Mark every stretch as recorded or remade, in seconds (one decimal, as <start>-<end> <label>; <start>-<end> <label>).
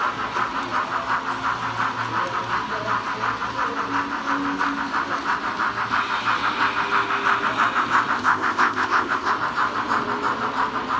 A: 0.0-8.2 recorded; 8.2-9.3 remade; 9.3-11.0 recorded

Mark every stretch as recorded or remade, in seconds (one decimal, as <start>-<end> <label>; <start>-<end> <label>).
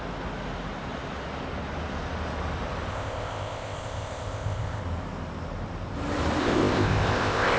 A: 0.0-2.9 recorded; 2.9-4.8 remade; 4.8-6.4 recorded; 6.4-7.6 remade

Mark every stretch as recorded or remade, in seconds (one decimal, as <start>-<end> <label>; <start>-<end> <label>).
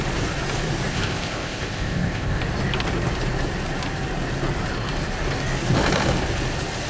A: 0.0-0.9 recorded; 0.9-2.4 remade; 2.4-6.9 recorded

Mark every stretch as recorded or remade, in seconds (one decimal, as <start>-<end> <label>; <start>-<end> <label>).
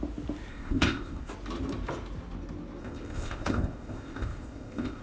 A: 0.0-0.5 recorded; 0.5-1.3 remade; 1.3-2.8 recorded; 2.8-5.0 remade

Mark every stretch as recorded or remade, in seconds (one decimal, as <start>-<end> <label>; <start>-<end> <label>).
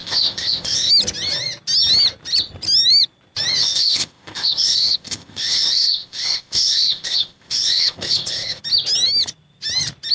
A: 0.0-0.9 remade; 0.9-3.6 recorded; 3.6-8.6 remade; 8.6-10.1 recorded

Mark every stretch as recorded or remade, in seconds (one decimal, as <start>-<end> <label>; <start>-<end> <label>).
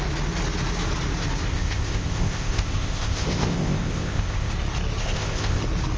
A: 0.0-1.5 recorded; 1.5-4.5 remade; 4.5-5.0 recorded; 5.0-5.6 remade; 5.6-6.0 recorded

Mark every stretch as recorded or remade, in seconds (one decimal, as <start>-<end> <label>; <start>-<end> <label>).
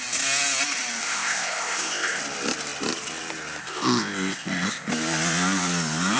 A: 0.0-1.0 recorded; 1.0-2.2 remade; 2.2-3.6 recorded; 3.6-4.9 remade; 4.9-6.2 recorded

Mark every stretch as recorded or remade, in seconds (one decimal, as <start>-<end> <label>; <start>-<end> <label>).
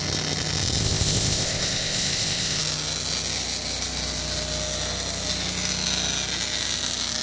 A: 0.0-0.8 recorded; 0.8-2.6 remade; 2.6-7.2 recorded